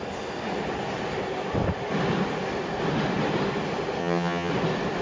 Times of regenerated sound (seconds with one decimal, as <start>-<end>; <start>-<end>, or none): 4.0-4.5